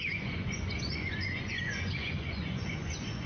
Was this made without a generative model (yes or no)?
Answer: no